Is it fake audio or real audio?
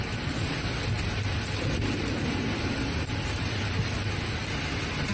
real